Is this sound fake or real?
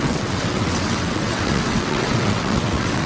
fake